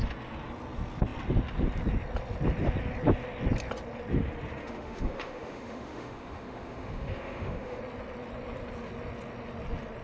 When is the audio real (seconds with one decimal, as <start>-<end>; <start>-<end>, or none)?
0.0-4.6; 7.8-10.0

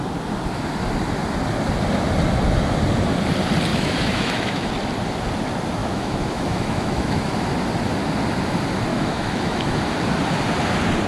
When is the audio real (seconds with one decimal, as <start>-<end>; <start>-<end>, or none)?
0.0-3.7; 4.7-5.8; 7.3-8.9; 9.8-11.1